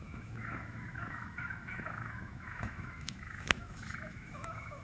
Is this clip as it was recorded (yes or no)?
no